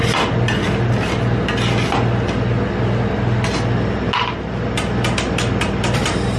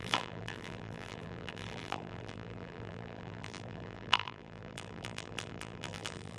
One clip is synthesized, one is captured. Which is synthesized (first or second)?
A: second